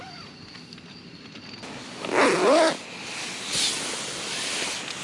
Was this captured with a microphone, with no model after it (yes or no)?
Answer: yes